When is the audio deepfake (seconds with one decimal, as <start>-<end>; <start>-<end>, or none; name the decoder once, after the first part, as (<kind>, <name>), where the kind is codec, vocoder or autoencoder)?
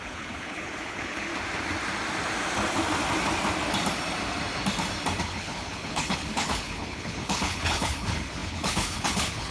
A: 0.0-1.3 (codec, HILCodec); 5.2-9.5